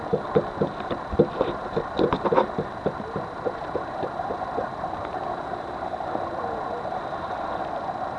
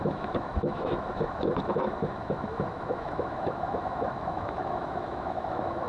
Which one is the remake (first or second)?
second